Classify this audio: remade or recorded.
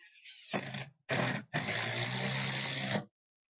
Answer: recorded